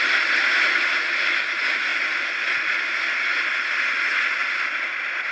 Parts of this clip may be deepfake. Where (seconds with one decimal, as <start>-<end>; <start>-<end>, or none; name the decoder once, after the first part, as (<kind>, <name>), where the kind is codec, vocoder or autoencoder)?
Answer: 4.4-5.3 (vocoder, BigVGAN v2)